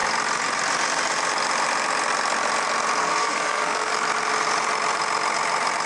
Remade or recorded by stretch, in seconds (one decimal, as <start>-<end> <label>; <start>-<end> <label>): 0.0-3.0 recorded; 3.0-3.9 remade; 3.9-5.9 recorded